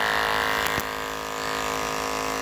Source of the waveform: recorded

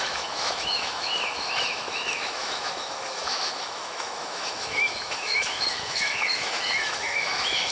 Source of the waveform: remade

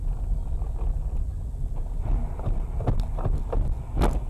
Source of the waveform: recorded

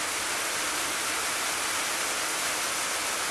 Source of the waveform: recorded